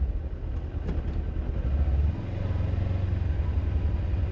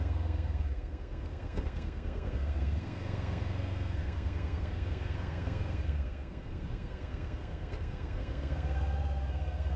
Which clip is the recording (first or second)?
first